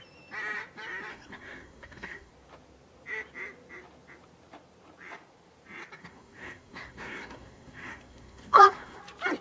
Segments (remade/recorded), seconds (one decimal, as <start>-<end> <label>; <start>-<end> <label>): 0.0-1.1 recorded; 1.1-2.3 remade; 2.3-6.0 recorded; 6.0-9.0 remade; 9.0-9.4 recorded